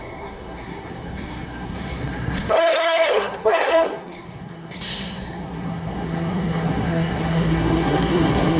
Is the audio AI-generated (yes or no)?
yes